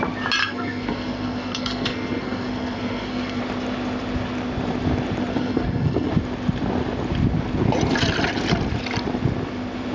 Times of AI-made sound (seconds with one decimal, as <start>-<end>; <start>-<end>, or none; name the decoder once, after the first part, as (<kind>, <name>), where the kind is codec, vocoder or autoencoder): 0.4-3.4 (codec, SNAC); 5.3-6.1